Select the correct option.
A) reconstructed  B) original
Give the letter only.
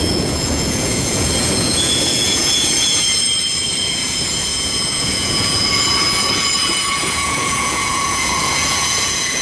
A